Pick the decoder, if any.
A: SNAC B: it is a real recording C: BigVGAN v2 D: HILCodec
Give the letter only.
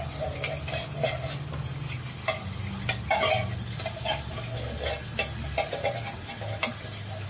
B